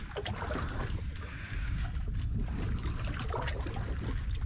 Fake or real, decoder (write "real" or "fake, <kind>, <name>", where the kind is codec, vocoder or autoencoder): real